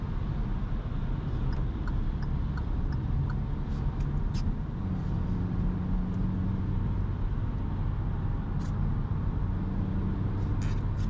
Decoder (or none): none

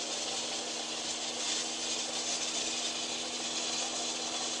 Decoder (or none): none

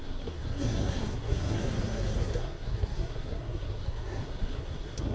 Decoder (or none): codec, SNAC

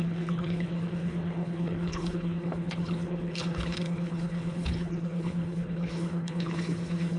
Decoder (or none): codec, HILCodec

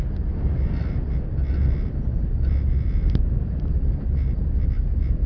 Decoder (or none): none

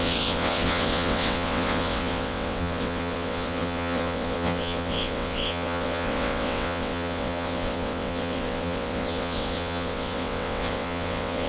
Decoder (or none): vocoder, WaveNeXt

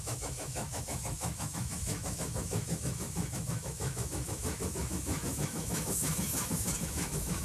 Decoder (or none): autoencoder, DAC-VAE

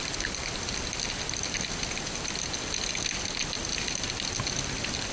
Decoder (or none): none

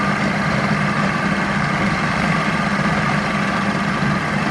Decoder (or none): none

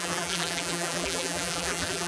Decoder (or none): vocoder, BigVGAN v2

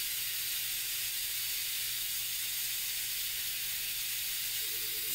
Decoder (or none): none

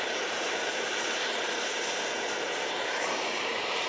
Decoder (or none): vocoder, BigVGAN v2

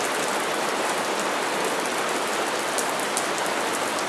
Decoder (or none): none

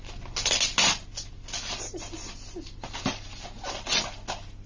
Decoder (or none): none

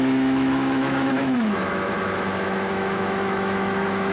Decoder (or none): autoencoder, DAC-VAE